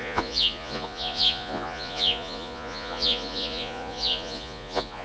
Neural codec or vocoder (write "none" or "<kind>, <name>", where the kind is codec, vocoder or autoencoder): vocoder, Vocos